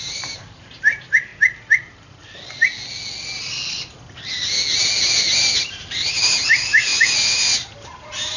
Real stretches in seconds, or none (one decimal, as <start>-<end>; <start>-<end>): 1.3-5.6; 6.9-7.9